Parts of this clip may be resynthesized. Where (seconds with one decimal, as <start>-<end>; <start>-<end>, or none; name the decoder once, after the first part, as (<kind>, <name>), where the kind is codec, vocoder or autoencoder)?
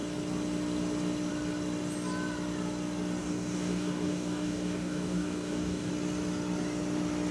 3.2-5.9 (codec, DAC)